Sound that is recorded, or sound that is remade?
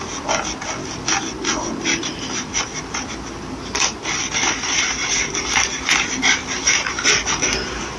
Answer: recorded